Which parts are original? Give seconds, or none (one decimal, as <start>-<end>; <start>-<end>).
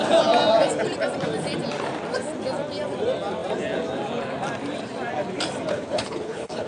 0.0-5.7